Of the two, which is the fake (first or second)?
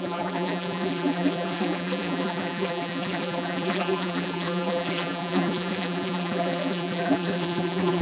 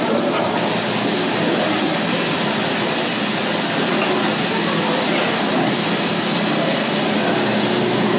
first